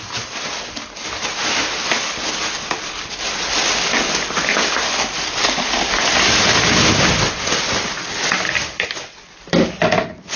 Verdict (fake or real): real